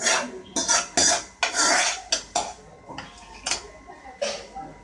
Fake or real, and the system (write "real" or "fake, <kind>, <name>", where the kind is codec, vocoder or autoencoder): real